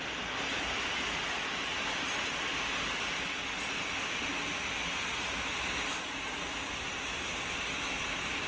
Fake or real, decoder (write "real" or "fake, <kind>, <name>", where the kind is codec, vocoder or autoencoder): real